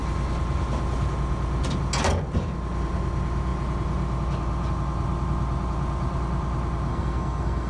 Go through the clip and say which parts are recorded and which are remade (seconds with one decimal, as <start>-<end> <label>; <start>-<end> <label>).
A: 0.0-6.9 recorded; 6.9-7.7 remade